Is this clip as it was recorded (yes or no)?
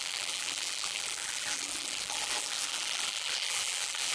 no